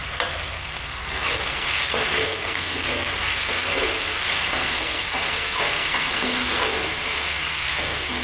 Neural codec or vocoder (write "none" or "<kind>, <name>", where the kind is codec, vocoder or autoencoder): codec, SNAC